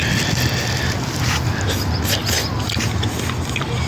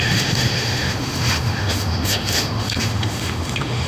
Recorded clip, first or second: first